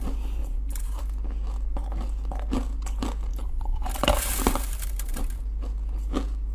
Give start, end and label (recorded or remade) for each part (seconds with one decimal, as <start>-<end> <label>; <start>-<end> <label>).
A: 0.0-0.4 recorded; 0.4-1.0 remade; 1.0-3.3 recorded; 3.3-5.4 remade; 5.4-6.5 recorded

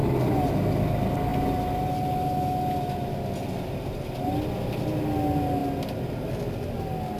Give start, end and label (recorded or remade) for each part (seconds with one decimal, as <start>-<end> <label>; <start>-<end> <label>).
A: 0.0-0.5 remade; 0.5-1.3 recorded; 1.3-2.0 remade; 2.0-7.2 recorded